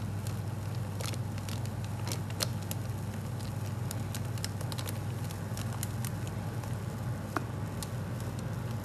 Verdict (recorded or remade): recorded